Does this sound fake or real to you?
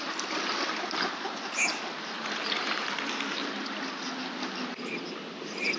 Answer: real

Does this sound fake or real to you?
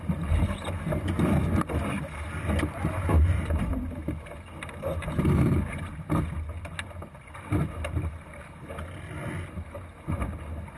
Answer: real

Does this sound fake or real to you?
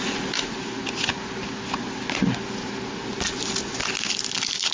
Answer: real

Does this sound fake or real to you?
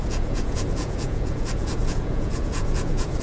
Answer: fake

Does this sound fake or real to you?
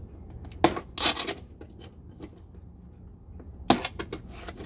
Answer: real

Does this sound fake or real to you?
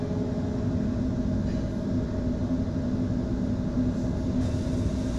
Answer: real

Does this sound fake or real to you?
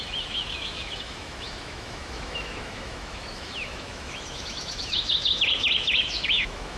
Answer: fake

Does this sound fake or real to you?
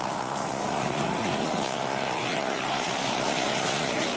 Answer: fake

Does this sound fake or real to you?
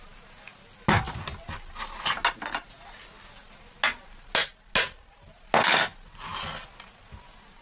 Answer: real